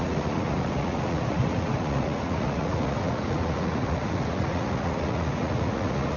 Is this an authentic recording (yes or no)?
no